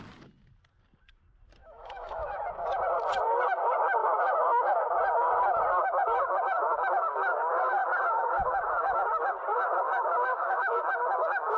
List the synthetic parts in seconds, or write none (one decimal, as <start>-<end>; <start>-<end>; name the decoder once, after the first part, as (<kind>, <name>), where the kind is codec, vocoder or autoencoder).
1.6-2.5 (autoencoder, DAC-VAE); 4.0-5.0; 10.3-10.8